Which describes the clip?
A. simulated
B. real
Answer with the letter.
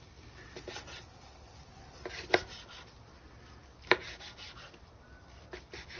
B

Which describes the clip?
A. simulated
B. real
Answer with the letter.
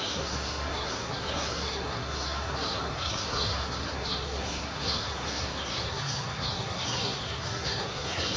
A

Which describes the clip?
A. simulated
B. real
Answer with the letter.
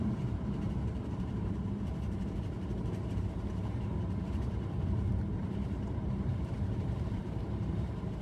A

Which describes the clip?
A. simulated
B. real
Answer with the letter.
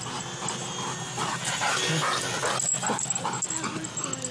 B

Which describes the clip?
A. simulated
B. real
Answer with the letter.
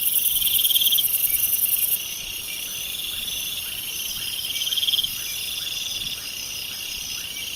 B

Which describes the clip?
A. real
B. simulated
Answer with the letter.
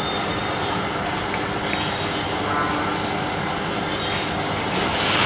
A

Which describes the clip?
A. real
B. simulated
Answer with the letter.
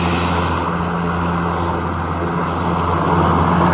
A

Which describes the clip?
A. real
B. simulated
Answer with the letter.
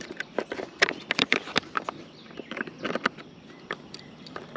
B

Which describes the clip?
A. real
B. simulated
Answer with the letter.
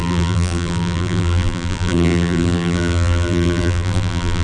B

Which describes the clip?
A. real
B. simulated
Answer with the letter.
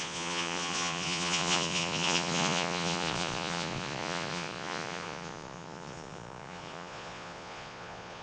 B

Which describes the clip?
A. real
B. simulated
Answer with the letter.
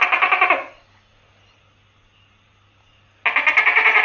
A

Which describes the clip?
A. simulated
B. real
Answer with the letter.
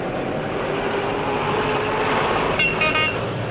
B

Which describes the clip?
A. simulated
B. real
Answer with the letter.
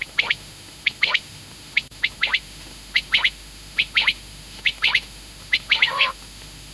A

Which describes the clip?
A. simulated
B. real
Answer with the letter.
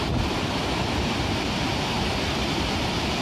B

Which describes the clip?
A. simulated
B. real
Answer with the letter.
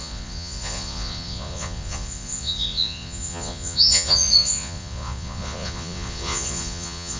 A